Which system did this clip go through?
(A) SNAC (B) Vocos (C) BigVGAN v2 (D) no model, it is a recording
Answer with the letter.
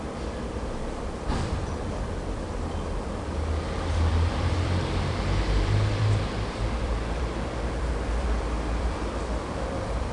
C